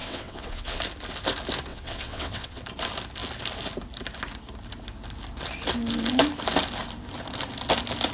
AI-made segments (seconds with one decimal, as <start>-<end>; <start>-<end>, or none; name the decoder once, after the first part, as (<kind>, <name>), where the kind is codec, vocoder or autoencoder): 0.0-0.8 (vocoder, WaveNeXt); 1.7-2.6